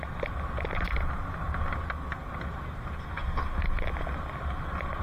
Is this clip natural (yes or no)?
yes